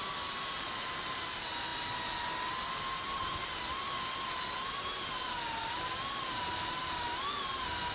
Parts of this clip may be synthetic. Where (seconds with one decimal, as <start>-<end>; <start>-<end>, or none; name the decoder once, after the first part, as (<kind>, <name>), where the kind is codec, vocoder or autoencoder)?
none